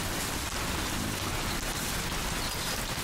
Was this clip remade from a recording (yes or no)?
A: no